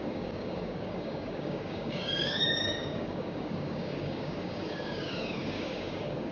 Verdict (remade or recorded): remade